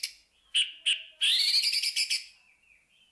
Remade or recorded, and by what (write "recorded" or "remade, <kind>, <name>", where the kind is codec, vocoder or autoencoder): recorded